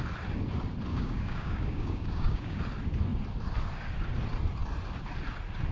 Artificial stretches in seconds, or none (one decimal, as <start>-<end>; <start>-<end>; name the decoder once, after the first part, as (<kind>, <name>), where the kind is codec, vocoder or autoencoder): 0.9-2.6 (codec, DAC)